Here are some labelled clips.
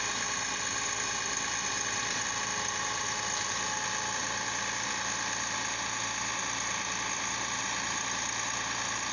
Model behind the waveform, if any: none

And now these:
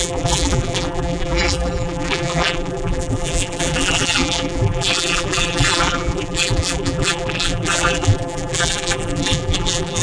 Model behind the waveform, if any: vocoder, BigVGAN v2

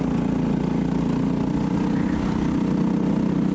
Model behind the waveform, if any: none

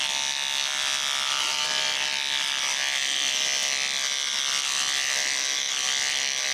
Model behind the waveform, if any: none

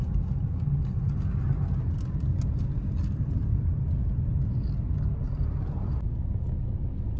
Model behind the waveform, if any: none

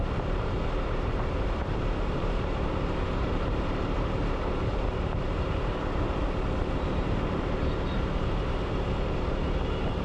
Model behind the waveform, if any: vocoder, BigVGAN v2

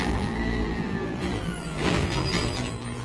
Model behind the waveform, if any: vocoder, BigVGAN v2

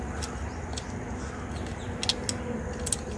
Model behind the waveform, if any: none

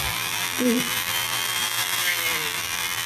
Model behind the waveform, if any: vocoder, BigVGAN v2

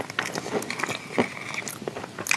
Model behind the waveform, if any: none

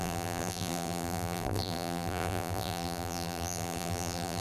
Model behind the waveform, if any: vocoder, BigVGAN v2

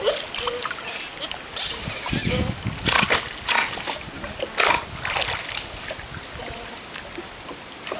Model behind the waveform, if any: none